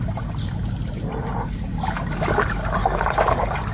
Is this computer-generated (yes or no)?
no